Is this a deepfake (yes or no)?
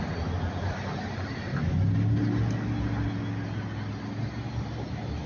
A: no